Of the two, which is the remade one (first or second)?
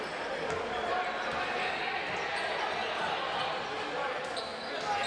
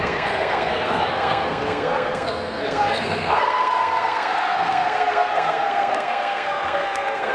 second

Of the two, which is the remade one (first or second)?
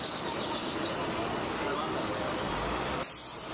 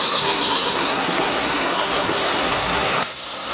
second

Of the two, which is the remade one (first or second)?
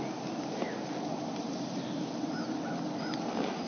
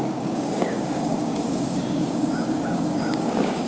second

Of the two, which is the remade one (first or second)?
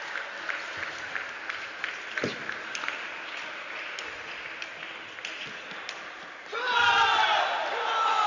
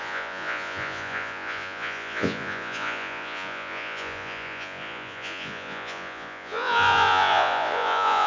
second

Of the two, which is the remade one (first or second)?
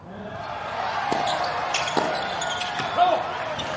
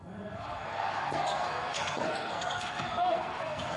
second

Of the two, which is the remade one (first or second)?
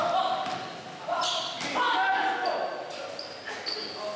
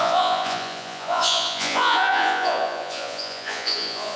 second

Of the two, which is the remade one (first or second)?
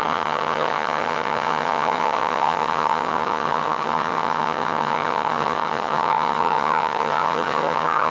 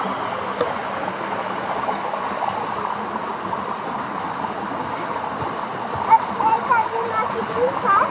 first